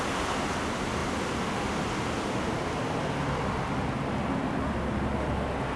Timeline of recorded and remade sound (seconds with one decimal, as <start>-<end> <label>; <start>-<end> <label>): 0.0-5.8 recorded